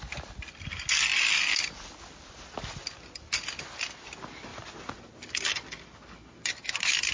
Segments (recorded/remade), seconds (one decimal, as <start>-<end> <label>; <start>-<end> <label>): 0.0-4.5 recorded; 4.5-5.4 remade; 5.4-7.1 recorded